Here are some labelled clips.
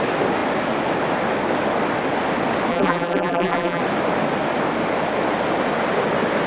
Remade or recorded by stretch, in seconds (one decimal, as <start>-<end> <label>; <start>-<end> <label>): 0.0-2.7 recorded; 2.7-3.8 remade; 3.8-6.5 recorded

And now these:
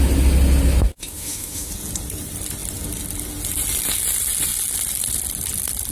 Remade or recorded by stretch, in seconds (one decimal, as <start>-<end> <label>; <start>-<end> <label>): 0.0-0.9 recorded; 0.9-1.7 remade; 1.7-5.9 recorded

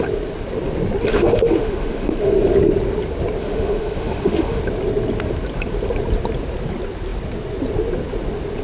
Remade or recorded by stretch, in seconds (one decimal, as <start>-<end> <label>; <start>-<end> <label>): 0.0-1.1 recorded; 1.1-2.3 remade; 2.3-3.4 recorded; 3.4-4.6 remade; 4.6-8.6 recorded

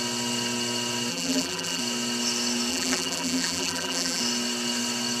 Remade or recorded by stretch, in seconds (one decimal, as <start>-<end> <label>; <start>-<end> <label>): 0.0-1.1 recorded; 1.1-1.8 remade; 1.8-2.7 recorded; 2.7-4.2 remade; 4.2-5.2 recorded